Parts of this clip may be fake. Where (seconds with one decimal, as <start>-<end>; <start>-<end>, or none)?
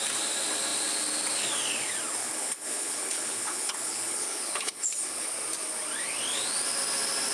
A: 2.2-5.3